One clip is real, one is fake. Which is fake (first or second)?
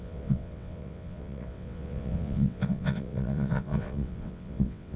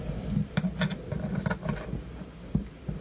first